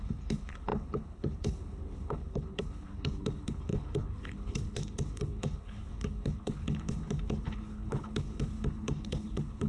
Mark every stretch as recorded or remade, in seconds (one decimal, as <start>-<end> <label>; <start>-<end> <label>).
0.0-9.7 remade